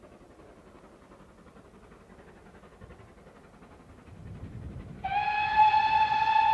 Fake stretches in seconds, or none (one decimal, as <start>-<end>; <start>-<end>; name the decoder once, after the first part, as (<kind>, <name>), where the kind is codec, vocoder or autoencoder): 4.2-5.0 (vocoder, BigVGAN v2)